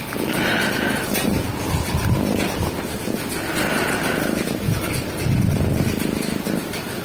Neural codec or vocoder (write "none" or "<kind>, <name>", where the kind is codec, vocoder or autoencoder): none